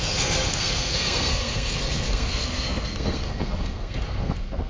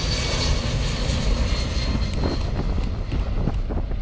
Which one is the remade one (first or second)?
first